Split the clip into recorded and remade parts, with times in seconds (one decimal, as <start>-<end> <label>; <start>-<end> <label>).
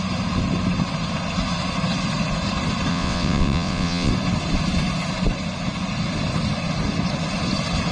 0.0-2.9 recorded; 2.9-4.1 remade; 4.1-7.9 recorded